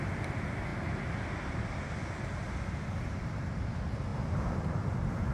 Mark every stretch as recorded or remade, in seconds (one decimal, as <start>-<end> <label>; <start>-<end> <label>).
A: 0.0-5.3 recorded